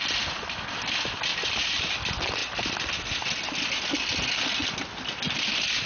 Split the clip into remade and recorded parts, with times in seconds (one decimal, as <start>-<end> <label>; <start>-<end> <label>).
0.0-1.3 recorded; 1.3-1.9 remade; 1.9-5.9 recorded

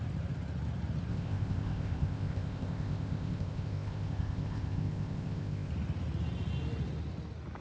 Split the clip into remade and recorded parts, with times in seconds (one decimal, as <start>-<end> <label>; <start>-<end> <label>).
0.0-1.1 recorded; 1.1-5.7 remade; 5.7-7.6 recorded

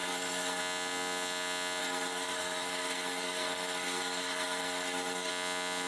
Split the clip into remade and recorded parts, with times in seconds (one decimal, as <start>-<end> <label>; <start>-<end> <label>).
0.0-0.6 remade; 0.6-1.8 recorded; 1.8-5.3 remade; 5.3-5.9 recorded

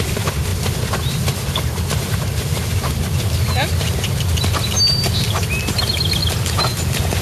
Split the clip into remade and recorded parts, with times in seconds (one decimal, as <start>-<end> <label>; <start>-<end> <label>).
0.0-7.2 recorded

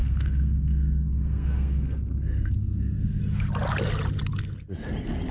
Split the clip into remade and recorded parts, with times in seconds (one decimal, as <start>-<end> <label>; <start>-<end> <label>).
0.0-3.2 remade; 3.2-5.3 recorded

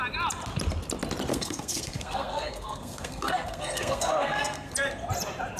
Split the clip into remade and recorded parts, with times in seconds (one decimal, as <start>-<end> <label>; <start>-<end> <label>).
0.0-1.3 recorded; 1.3-4.7 remade; 4.7-5.6 recorded

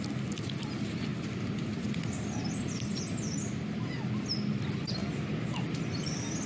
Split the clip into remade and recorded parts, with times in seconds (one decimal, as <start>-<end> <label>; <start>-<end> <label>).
0.0-6.5 recorded

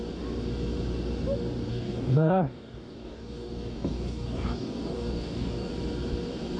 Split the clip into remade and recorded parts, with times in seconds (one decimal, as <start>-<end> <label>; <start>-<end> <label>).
0.0-1.7 recorded; 1.7-5.7 remade; 5.7-6.6 recorded